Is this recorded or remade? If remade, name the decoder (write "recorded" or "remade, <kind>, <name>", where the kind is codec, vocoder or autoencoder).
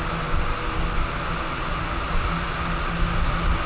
recorded